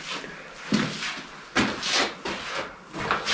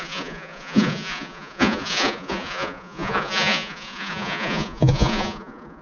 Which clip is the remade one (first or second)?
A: second